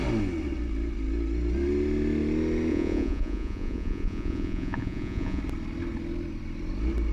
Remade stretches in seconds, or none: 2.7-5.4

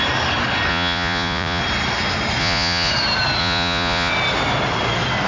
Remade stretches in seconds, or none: 0.7-1.6; 2.4-2.9; 3.4-4.1

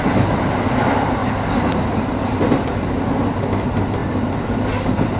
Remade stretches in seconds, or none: 1.2-2.9; 4.0-5.2

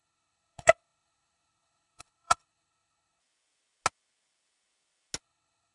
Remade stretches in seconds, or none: 0.0-3.2; 5.2-5.7

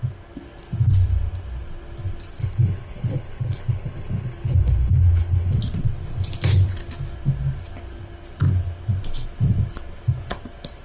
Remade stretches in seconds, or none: 2.4-5.6

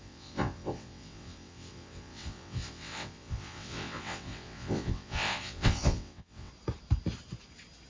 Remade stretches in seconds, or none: 0.0-6.5

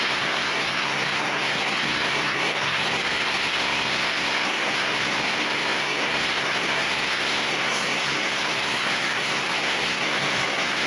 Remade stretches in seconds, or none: 0.0-10.9